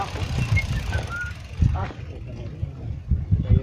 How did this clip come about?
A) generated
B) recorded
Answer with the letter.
B